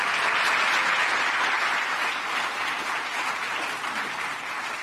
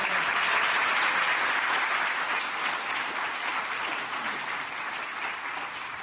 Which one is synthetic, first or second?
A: second